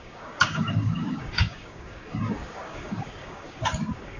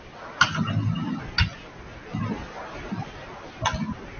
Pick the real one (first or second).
second